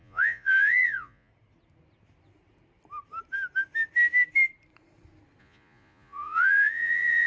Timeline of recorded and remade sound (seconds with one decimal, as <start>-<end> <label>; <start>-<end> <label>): 0.0-1.3 remade; 1.3-5.4 recorded; 5.4-7.3 remade